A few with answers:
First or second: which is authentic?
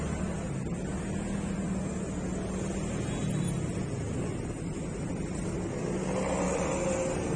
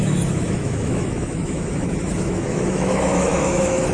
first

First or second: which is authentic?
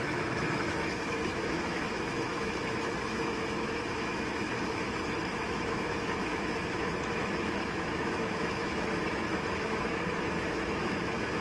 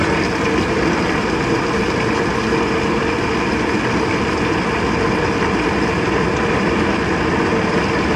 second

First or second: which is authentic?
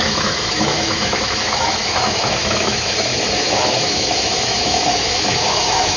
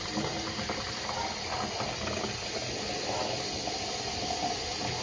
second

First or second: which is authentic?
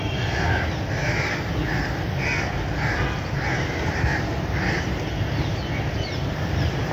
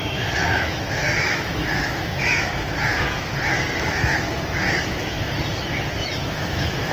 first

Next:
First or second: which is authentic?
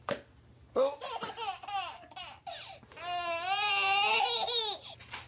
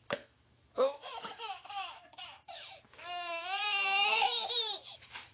first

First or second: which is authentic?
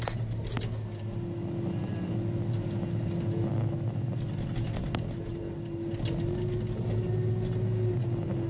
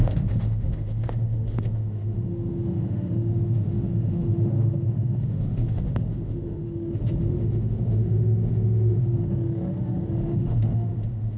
first